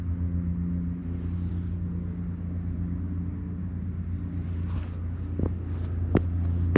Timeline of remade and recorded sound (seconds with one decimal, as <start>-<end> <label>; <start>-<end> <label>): 0.0-1.0 recorded; 1.0-1.5 remade; 1.5-6.8 recorded